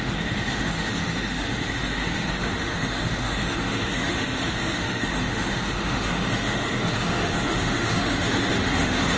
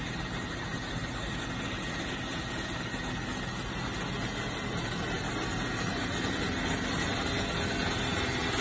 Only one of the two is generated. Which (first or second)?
first